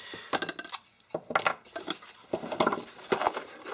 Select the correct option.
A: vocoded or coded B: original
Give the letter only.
B